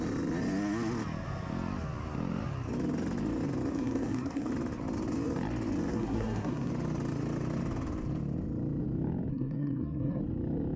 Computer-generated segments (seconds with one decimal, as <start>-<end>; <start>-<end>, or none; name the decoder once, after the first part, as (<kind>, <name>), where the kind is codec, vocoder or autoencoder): 3.7-4.5 (codec, SNAC); 5.9-6.7; 9.3-10.2